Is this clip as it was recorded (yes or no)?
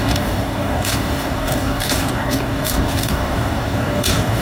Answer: no